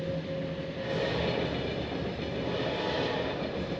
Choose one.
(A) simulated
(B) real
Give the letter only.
B